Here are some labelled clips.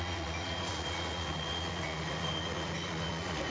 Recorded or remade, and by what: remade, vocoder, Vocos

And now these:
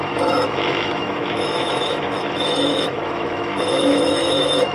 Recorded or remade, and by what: remade, autoencoder, DAC-VAE